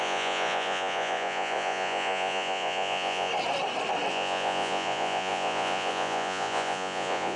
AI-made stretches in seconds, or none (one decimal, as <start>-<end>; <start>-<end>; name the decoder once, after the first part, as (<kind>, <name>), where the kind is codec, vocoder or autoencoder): 0.0-3.3 (vocoder, Vocos); 4.1-7.4